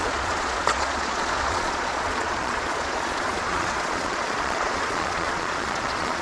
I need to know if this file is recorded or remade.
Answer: remade